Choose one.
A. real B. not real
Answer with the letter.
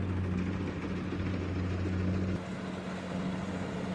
A